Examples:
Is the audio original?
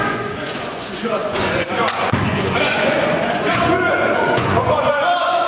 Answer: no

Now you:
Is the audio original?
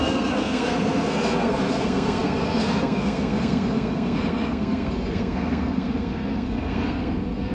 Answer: no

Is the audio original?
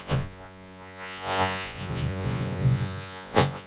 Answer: no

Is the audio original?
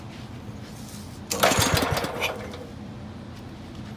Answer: yes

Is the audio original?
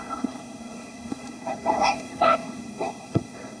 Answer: no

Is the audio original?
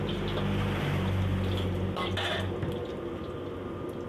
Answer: yes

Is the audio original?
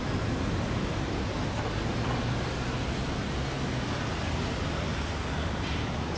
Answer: yes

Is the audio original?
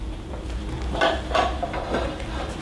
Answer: yes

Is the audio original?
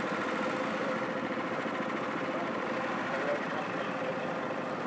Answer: yes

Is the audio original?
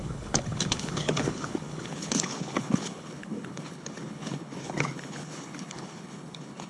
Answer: no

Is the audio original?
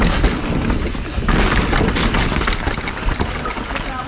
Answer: yes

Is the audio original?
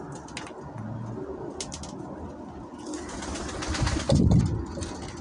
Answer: yes